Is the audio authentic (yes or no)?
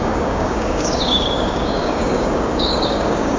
no